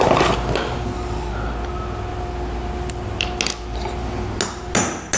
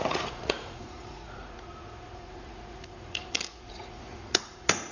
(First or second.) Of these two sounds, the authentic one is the first